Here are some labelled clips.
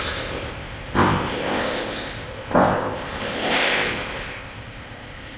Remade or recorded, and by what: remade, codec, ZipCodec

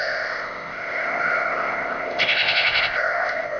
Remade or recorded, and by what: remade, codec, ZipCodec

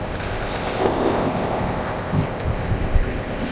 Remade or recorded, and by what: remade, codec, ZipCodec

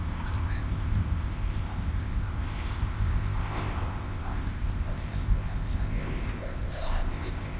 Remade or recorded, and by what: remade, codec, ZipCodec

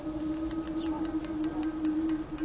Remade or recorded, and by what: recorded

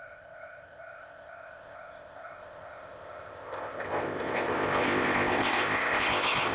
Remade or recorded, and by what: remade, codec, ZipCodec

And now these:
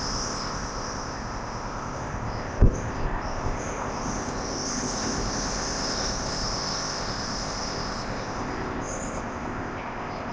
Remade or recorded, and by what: remade, codec, ZipCodec